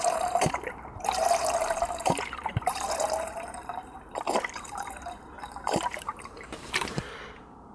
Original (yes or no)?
no